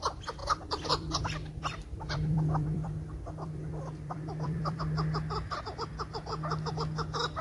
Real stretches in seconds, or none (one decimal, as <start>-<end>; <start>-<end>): 0.0-0.4; 4.8-7.4

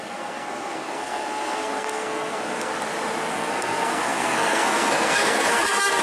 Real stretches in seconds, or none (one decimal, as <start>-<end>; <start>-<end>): 2.7-3.3